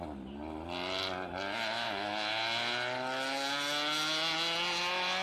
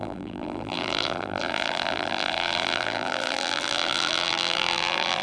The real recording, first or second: first